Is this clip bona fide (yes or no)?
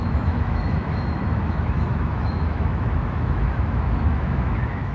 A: no